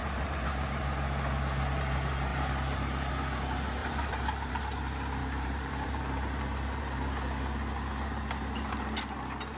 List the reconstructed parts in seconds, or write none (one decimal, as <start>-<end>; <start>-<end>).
0.0-0.8; 2.3-3.1; 3.8-4.8; 5.2-6.8